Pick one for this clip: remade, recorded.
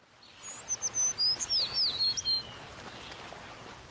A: recorded